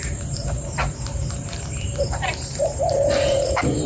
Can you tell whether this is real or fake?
fake